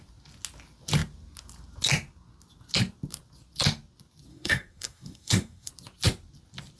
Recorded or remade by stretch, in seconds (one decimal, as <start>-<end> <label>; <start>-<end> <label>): 0.0-4.3 recorded; 4.3-5.7 remade; 5.7-6.8 recorded